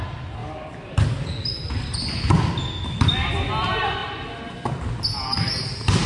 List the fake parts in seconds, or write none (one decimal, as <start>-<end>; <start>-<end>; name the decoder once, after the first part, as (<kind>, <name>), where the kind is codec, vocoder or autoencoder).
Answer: none